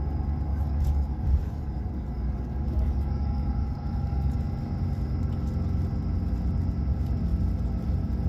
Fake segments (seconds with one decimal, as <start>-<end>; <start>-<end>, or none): 0.5-4.4